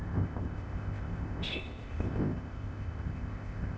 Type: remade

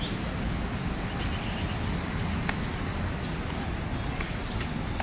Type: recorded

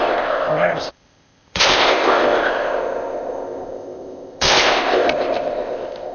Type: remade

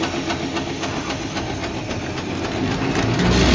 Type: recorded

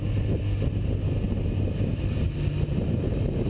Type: recorded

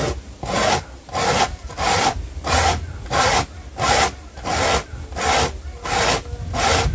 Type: recorded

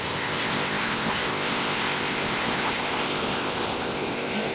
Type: remade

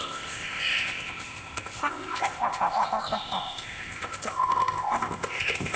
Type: remade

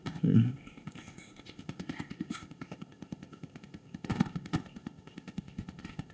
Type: remade